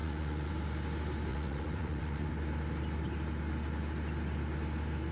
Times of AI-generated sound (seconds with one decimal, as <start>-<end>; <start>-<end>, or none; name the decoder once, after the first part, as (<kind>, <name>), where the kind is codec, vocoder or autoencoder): 0.0-0.5 (vocoder, Vocos); 1.3-2.3